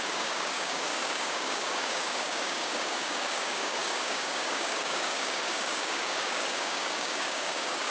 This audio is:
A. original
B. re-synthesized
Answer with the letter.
B